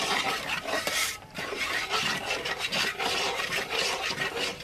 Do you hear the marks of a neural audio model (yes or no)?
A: yes